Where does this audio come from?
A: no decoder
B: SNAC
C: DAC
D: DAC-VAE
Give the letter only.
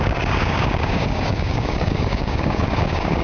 C